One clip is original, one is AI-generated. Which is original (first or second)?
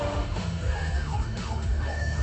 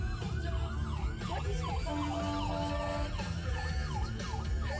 second